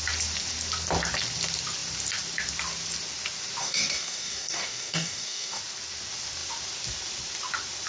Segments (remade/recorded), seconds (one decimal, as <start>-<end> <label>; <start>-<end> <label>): 0.0-3.6 recorded; 3.6-5.6 remade; 5.6-7.9 recorded